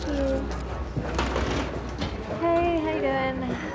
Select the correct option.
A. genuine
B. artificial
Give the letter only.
A